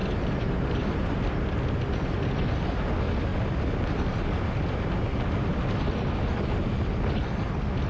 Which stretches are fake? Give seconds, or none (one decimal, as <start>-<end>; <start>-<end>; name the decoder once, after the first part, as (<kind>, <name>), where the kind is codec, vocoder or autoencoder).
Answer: 0.0-1.2 (vocoder, BigVGAN v2)